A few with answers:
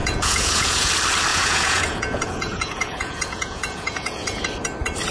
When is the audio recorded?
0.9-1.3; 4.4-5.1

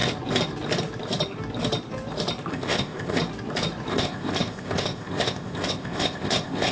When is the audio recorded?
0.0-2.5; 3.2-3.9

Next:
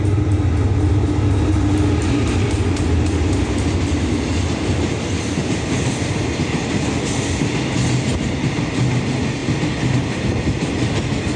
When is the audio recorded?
0.0-11.4

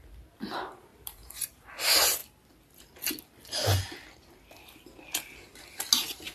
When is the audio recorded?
0.0-0.9; 1.7-6.3

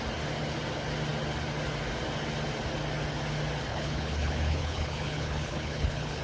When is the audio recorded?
0.0-3.7

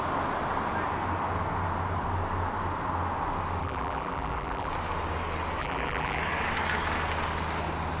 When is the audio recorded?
0.0-3.6; 4.7-5.6; 6.2-8.0

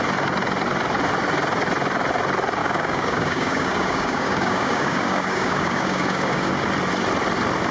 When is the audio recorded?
0.0-2.6; 6.5-7.7